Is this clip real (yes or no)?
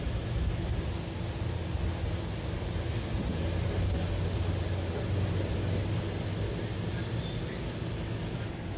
yes